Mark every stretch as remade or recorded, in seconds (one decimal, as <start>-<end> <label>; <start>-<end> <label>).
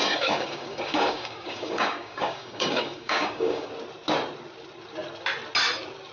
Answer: 0.0-3.7 remade; 3.7-6.1 recorded